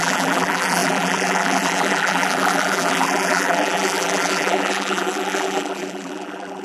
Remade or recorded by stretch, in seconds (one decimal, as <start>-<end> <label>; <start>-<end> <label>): 0.0-6.6 remade